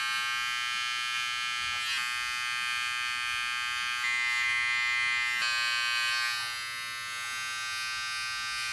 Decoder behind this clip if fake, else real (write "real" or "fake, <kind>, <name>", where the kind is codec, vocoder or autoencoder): real